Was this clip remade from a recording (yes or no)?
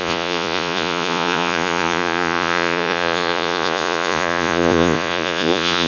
yes